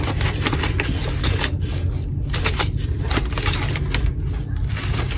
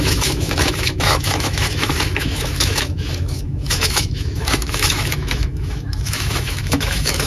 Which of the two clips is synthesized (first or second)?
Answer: second